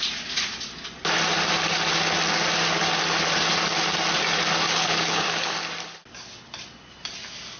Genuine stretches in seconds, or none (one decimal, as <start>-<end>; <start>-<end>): 0.0-4.7; 5.7-7.6